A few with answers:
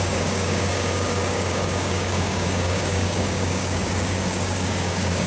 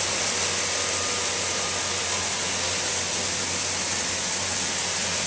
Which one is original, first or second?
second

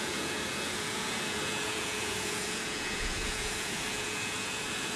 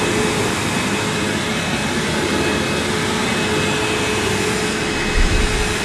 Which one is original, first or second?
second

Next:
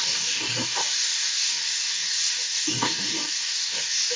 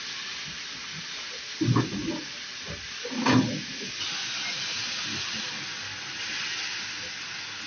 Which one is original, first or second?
second